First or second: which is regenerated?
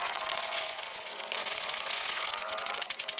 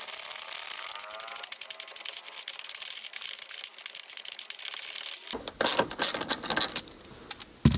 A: first